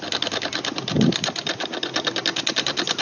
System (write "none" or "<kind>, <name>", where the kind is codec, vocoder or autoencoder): none